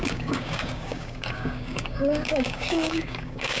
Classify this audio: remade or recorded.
remade